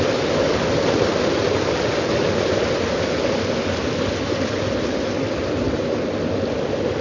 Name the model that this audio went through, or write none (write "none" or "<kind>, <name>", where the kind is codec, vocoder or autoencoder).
none